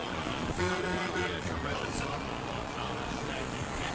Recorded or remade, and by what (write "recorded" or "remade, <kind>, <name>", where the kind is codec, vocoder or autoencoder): remade, vocoder, Vocos